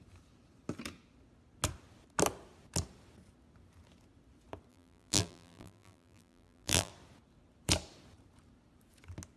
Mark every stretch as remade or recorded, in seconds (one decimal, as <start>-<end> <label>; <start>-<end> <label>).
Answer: 0.0-4.7 recorded; 4.7-6.9 remade; 6.9-9.4 recorded